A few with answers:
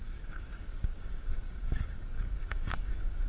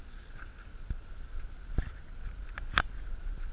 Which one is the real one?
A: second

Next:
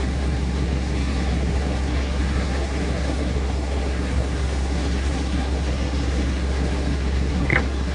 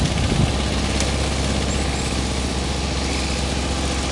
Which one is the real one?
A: second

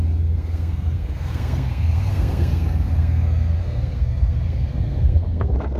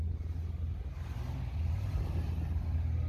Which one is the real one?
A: second